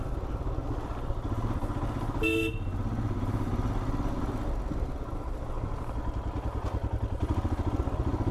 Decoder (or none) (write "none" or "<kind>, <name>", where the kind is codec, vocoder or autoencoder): none